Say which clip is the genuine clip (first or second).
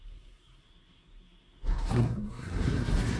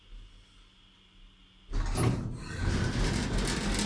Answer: second